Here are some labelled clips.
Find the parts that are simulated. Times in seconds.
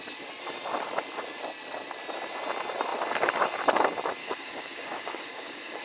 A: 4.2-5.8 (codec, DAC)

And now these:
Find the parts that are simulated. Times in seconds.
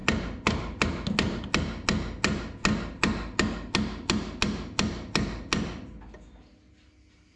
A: none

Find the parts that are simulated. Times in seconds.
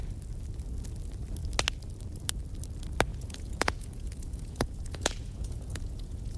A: 3.1-6.4 (vocoder, Vocos)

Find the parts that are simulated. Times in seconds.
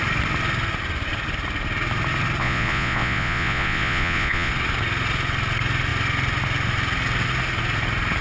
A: 2.4-4.5 (vocoder, Vocos)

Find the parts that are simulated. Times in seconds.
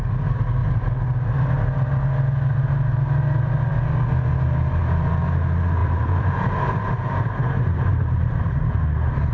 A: 5.8-8.8 (vocoder, BigVGAN v2)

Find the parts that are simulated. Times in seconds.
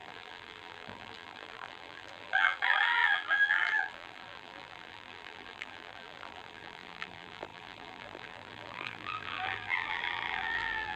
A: 0.0-11.0 (vocoder, BigVGAN v2)